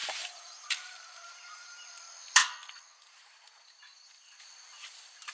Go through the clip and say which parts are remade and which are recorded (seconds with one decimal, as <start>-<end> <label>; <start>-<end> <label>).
0.0-1.9 remade; 1.9-5.3 recorded